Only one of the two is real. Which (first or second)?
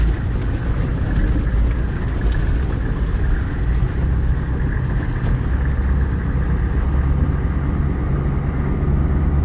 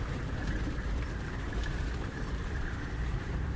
first